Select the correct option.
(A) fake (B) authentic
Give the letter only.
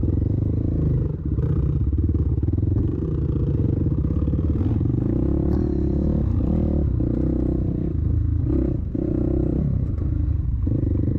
B